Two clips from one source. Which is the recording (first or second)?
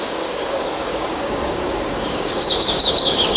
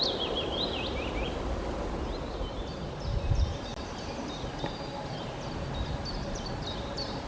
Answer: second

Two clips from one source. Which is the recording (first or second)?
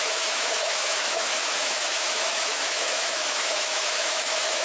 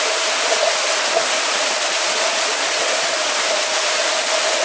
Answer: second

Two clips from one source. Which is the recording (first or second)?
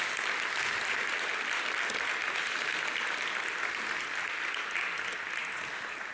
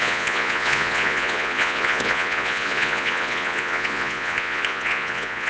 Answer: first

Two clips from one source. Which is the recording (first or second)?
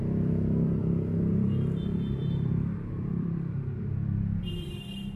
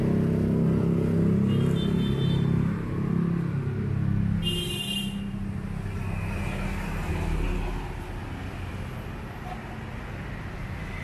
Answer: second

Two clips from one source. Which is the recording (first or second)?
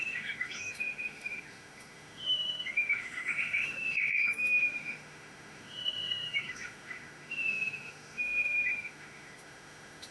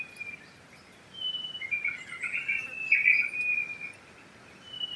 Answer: second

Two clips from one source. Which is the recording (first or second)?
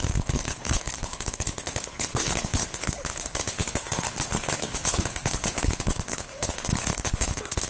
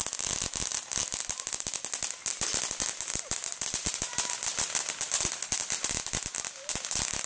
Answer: second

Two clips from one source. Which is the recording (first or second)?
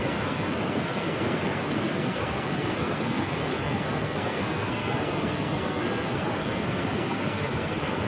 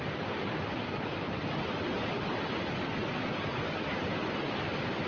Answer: second